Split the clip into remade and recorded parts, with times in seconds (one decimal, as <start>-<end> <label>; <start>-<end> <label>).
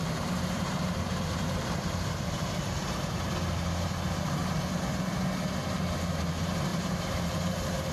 0.0-3.1 remade; 3.1-6.7 recorded; 6.7-7.9 remade